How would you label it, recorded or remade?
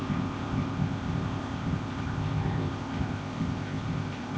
remade